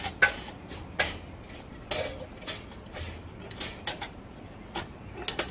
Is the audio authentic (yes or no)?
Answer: yes